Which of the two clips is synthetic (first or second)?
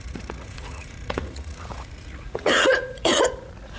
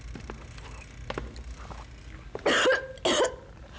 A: first